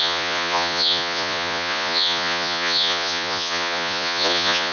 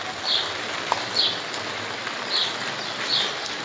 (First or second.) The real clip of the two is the second